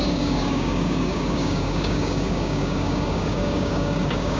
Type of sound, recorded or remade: remade